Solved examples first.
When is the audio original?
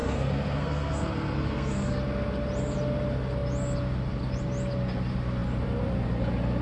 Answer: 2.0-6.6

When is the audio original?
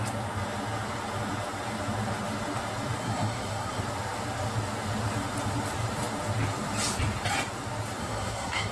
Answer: 0.0-3.0; 3.8-8.0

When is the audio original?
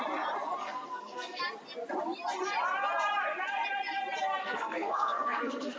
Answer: 0.0-0.6; 1.4-4.4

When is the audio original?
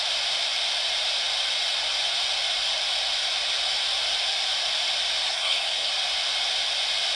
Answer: 0.0-5.2; 5.9-7.1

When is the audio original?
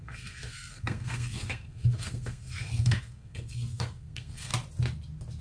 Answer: 4.5-5.4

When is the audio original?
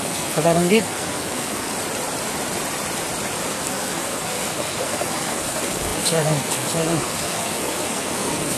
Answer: 1.7-3.5